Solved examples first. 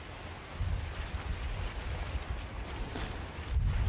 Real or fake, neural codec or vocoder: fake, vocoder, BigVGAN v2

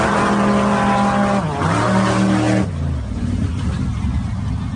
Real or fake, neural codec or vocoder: real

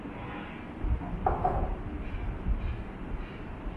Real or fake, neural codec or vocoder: real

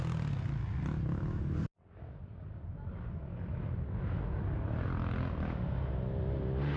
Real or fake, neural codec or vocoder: real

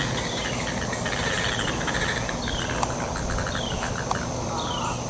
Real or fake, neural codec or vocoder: real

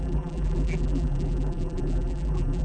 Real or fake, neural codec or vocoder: fake, vocoder, BigVGAN v2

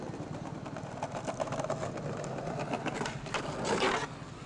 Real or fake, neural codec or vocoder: real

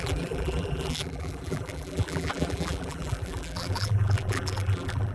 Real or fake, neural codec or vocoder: fake, vocoder, BigVGAN v2